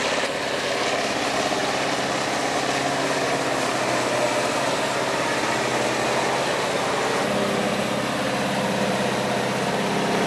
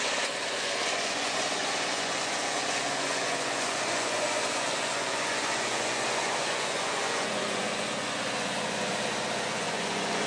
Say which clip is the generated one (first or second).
second